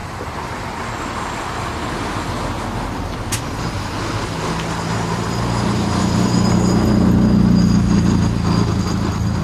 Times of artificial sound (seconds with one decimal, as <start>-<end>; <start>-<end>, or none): 0.0-0.8